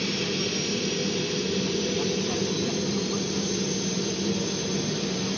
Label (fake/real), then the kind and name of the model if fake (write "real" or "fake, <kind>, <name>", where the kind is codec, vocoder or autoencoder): real